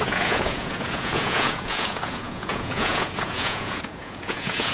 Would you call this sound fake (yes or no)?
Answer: yes